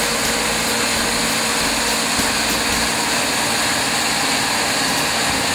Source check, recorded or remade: recorded